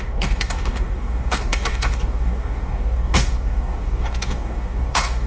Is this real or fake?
fake